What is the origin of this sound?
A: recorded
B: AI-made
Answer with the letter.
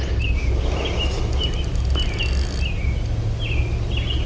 A